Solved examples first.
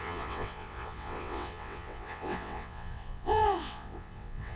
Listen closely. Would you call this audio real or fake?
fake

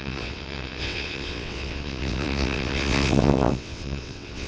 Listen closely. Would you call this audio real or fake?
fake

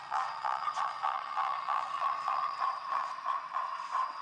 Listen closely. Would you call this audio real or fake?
fake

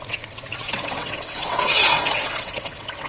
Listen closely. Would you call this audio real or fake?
fake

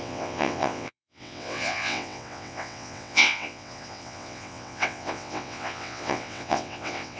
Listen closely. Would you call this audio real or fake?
fake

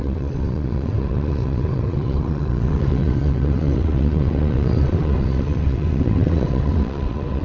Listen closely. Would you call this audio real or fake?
fake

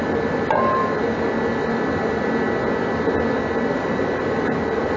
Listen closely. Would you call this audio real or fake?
real